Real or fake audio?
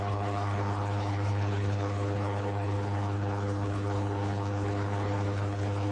fake